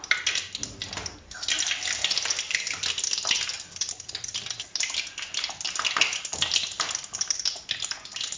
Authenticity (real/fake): real